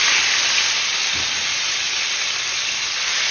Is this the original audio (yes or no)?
yes